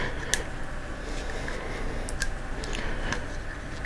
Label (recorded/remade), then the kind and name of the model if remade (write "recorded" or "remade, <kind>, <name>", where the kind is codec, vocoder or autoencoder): recorded